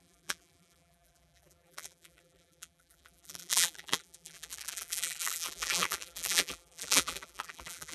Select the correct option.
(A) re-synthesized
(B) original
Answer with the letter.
A